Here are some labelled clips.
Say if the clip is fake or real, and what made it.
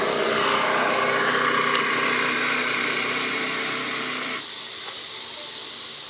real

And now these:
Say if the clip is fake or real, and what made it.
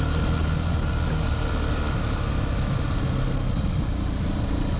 real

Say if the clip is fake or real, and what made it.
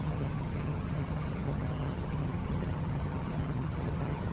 fake, vocoder, HiFi-GAN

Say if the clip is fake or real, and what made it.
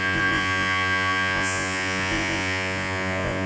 fake, vocoder, Vocos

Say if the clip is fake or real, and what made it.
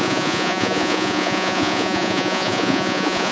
fake, vocoder, Vocos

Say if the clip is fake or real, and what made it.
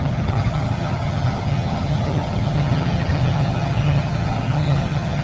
fake, vocoder, HiFi-GAN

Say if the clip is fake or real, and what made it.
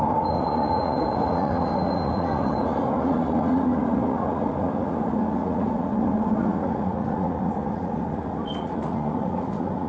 fake, vocoder, Vocos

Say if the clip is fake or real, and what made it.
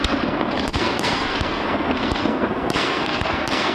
fake, codec, SNAC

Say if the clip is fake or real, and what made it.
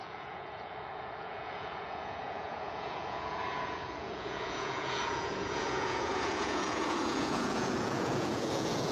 fake, vocoder, Vocos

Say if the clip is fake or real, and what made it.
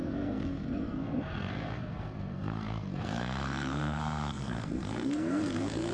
fake, codec, SNAC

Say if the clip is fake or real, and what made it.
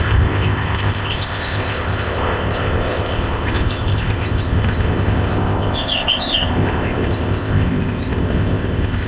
fake, codec, ZipCodec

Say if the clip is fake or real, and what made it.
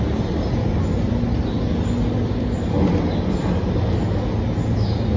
real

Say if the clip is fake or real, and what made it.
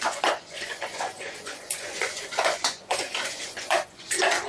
fake, vocoder, Vocos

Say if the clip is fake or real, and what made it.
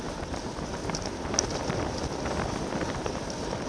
real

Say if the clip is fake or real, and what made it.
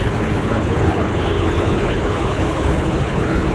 fake, codec, HILCodec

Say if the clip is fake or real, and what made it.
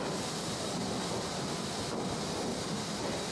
real